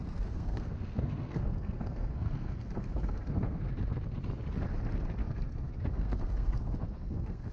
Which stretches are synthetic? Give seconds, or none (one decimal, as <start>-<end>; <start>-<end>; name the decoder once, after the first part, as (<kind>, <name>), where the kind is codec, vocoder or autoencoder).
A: 0.0-3.7 (codec, SNAC); 5.2-7.5